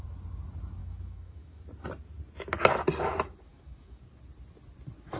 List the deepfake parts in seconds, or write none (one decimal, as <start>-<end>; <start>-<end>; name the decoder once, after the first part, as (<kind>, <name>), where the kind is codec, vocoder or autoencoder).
0.8-1.6 (autoencoder, DAC-VAE); 3.5-4.0